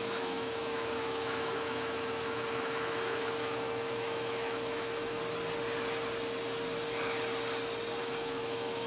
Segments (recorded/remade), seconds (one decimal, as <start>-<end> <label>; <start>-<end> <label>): 0.0-5.2 remade; 5.2-8.0 recorded; 8.0-8.9 remade